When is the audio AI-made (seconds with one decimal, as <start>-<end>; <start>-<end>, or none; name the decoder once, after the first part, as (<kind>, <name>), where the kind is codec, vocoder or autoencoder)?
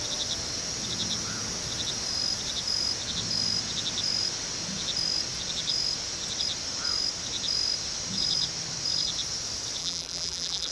9.8-10.7 (vocoder, BigVGAN v2)